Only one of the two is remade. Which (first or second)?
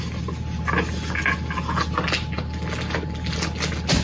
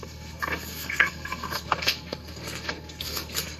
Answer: second